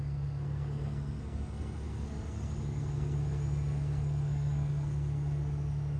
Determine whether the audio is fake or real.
fake